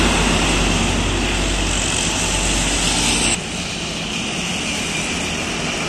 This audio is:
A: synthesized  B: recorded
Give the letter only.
B